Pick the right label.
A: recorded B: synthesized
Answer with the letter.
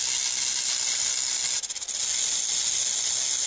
A